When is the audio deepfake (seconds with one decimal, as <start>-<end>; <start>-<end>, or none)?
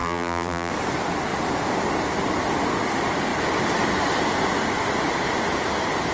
0.0-0.7